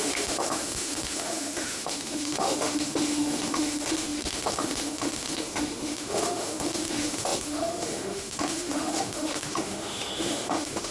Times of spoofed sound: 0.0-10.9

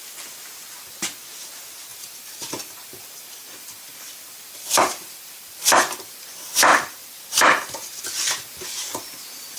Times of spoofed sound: 1.9-6.2; 6.7-8.0

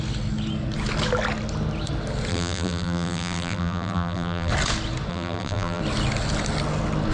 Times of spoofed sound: 2.3-4.5; 5.1-5.8

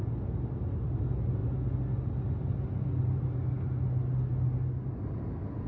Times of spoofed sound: none

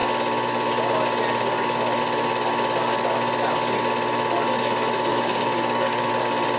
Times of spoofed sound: 5.1-6.1

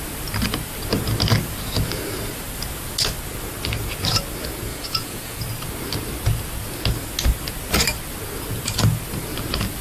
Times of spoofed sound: 4.7-5.4